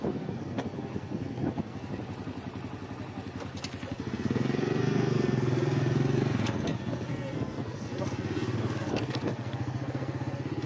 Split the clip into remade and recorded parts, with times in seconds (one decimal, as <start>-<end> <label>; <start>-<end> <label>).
0.0-1.9 remade; 1.9-3.9 recorded; 3.9-10.7 remade